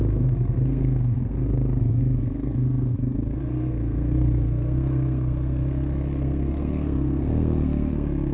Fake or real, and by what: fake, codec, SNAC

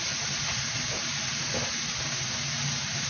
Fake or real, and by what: fake, vocoder, BigVGAN v2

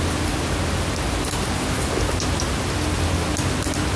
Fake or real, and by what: real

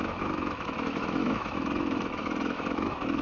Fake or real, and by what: fake, autoencoder, DAC-VAE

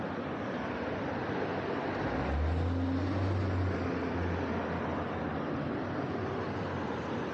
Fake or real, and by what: real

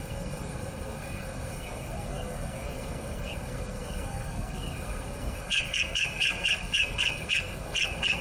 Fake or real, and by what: fake, codec, SNAC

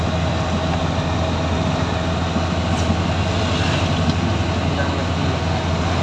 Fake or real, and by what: real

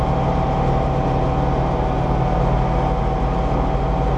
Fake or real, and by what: real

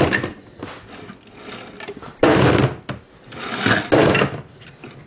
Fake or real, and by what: real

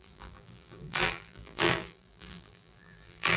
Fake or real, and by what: fake, vocoder, BigVGAN v2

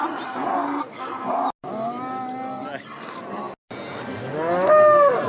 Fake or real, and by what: real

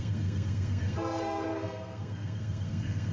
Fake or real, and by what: fake, codec, SNAC